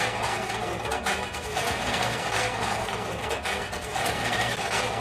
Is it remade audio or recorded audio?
remade